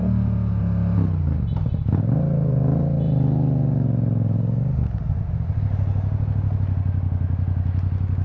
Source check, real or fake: real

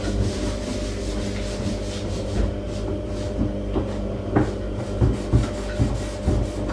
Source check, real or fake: real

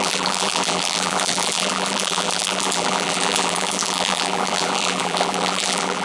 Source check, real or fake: fake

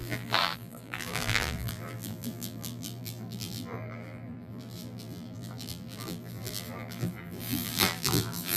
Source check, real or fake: fake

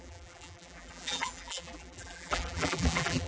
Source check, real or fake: fake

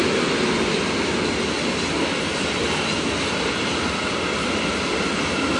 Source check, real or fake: real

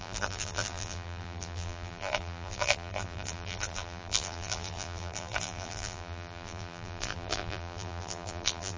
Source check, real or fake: fake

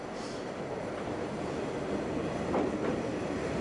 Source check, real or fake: fake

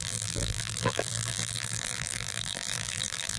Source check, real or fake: fake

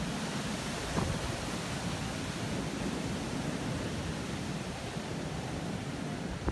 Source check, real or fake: fake